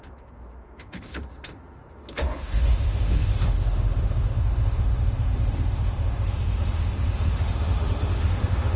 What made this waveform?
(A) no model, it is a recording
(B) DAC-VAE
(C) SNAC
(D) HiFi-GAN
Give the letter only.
B